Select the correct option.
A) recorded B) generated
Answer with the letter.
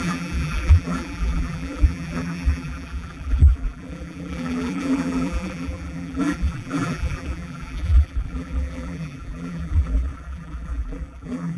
B